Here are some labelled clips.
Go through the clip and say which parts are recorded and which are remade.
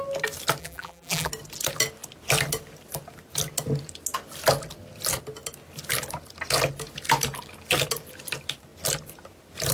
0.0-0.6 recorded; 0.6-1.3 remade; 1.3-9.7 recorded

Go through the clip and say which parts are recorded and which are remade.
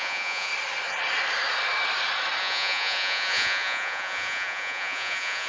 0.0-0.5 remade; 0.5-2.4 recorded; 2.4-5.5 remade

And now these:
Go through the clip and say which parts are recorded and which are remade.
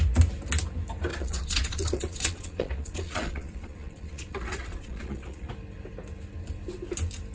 0.0-1.1 recorded; 1.1-5.5 remade; 5.5-7.3 recorded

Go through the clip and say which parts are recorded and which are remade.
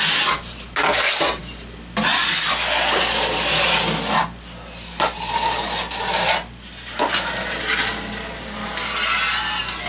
0.0-9.9 recorded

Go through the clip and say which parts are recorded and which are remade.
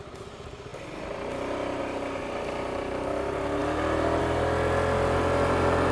0.0-5.9 recorded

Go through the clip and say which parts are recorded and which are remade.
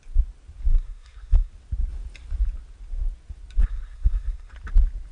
0.0-0.7 recorded; 0.7-1.5 remade; 1.5-3.6 recorded; 3.6-4.5 remade; 4.5-5.1 recorded